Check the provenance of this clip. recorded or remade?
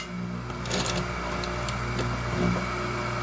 recorded